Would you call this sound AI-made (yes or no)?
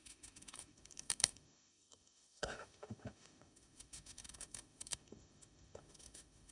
yes